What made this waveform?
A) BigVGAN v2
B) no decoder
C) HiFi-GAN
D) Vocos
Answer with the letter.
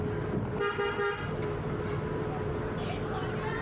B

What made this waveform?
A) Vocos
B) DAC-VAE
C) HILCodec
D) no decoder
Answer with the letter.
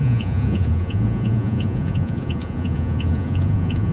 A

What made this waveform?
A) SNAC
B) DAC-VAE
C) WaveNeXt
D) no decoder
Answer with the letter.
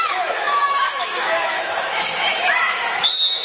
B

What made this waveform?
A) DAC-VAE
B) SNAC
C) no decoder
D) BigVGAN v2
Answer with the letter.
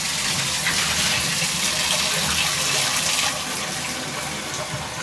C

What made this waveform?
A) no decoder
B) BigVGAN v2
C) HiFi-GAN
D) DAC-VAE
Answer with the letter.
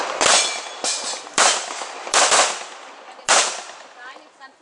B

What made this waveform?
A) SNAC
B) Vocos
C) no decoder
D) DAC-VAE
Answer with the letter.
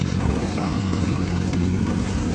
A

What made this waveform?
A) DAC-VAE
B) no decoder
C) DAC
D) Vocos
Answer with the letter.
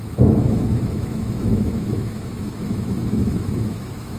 A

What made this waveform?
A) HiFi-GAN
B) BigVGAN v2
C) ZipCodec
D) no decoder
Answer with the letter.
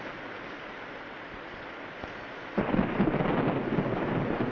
D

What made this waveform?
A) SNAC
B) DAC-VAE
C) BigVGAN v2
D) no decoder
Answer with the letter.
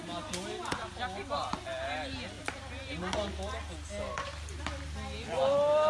D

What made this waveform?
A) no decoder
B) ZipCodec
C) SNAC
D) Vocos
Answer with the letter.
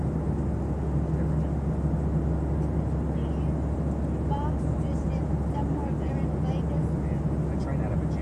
A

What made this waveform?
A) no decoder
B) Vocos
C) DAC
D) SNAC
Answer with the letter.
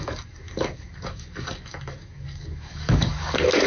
C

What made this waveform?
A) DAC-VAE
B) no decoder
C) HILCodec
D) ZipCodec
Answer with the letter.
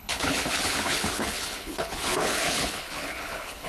C